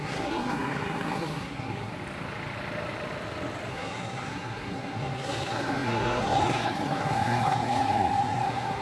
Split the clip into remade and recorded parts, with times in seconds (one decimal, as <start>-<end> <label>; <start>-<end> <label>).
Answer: 0.0-1.9 remade; 1.9-3.7 recorded; 3.7-8.8 remade